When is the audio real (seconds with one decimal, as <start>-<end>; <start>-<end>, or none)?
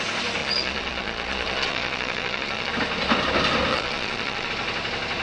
0.0-0.4; 2.7-3.7; 4.5-5.2